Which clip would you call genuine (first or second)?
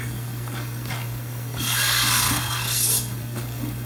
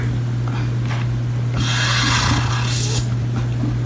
second